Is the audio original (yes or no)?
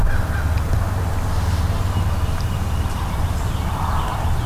yes